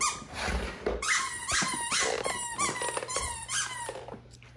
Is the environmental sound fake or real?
real